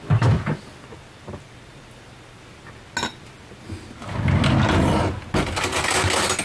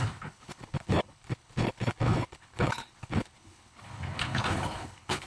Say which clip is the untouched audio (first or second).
first